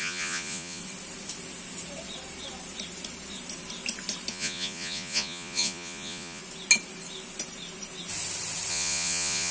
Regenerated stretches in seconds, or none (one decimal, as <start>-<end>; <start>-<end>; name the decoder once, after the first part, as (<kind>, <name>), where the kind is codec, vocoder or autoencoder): 0.0-0.8 (vocoder, Vocos); 4.3-6.4; 8.7-9.5

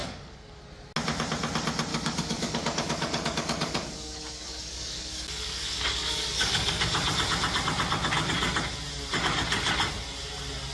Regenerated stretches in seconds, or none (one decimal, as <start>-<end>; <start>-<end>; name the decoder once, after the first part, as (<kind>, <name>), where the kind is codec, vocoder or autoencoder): 0.0-0.6 (codec, DAC); 1.9-6.8

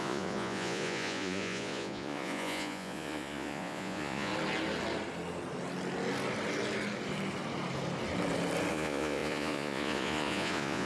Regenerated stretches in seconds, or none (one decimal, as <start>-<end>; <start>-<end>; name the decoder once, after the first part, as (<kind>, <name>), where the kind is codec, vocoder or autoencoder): 0.0-4.3 (vocoder, Vocos); 8.7-10.9

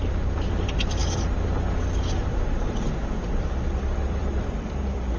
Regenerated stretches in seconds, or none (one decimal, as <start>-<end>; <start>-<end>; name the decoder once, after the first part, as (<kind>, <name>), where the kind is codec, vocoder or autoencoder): 0.0-1.0 (vocoder, BigVGAN v2); 2.2-5.2

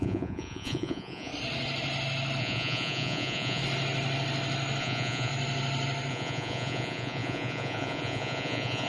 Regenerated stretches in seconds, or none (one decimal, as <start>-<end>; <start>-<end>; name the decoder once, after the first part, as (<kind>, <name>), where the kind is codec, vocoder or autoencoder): 0.0-1.3 (vocoder, Vocos); 2.4-3.6; 4.8-5.3; 6.1-8.9

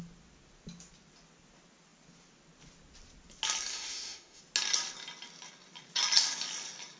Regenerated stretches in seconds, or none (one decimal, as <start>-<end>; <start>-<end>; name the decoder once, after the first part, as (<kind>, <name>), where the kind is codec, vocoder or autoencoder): 3.7-4.4 (autoencoder, DAC-VAE)

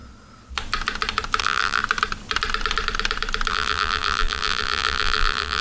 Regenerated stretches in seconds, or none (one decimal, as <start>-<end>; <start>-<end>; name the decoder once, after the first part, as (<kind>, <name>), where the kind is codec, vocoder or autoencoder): 1.4-1.8 (vocoder, BigVGAN v2); 3.5-5.6

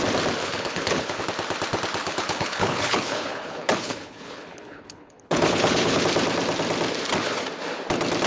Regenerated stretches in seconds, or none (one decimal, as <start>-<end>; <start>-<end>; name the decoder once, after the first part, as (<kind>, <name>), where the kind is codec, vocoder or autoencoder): 0.4-1.2 (codec, HILCodec); 2.0-6.0